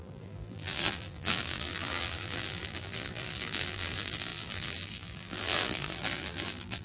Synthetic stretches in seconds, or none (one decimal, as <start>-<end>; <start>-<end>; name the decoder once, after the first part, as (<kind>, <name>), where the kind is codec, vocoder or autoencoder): 0.0-6.8 (vocoder, BigVGAN v2)

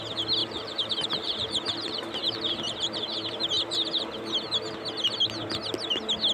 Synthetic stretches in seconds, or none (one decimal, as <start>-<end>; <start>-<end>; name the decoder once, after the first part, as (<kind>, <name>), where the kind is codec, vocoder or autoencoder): 0.4-4.2 (vocoder, BigVGAN v2)

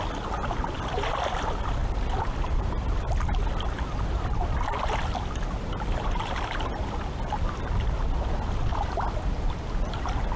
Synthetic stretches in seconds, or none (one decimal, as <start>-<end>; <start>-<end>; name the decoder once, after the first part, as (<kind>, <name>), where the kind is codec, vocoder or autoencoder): 1.8-3.7 (vocoder, BigVGAN v2)

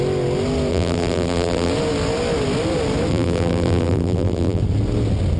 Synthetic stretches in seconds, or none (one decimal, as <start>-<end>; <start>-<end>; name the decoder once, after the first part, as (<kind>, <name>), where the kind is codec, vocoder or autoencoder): 0.7-1.7 (vocoder, BigVGAN v2); 3.1-4.6

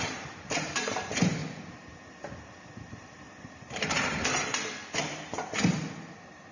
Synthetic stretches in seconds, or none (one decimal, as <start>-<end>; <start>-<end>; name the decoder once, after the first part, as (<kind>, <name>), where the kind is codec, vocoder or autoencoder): 0.0-1.4 (vocoder, BigVGAN v2); 2.9-4.2; 5.0-6.5